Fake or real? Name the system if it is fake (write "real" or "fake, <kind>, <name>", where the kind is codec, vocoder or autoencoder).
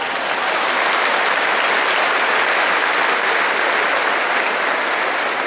real